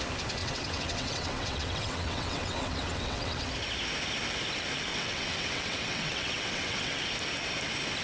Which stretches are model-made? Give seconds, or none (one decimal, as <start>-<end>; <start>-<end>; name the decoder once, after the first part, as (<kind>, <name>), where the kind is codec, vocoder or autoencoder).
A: 0.4-3.5 (vocoder, WaveNeXt); 4.9-7.0